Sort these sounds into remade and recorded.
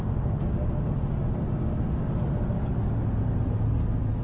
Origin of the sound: recorded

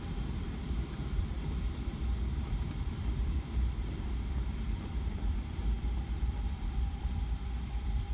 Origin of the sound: remade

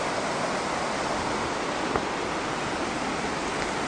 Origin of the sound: recorded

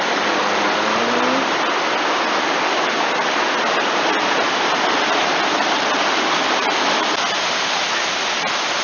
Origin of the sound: recorded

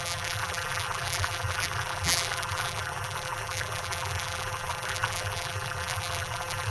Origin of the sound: remade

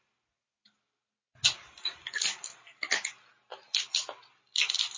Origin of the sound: recorded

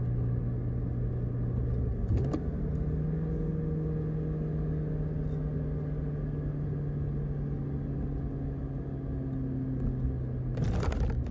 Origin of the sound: recorded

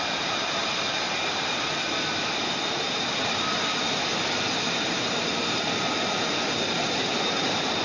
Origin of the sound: remade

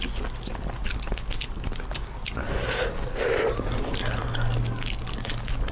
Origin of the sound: recorded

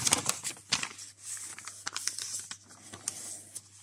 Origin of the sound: recorded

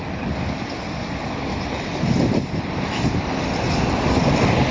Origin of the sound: recorded